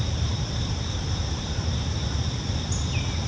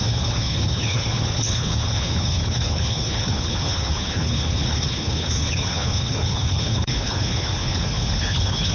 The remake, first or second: second